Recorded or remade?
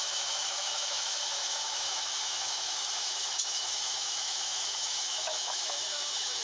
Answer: remade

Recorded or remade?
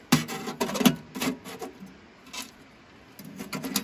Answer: recorded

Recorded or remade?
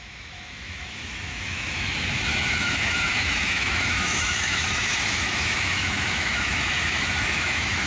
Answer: remade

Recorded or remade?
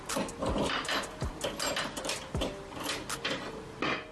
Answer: recorded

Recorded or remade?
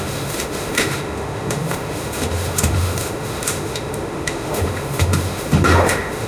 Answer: remade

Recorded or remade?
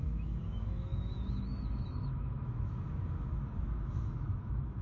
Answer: remade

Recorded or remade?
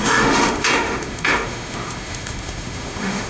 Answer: remade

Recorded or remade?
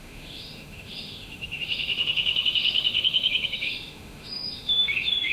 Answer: remade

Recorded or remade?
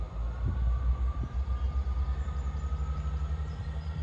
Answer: recorded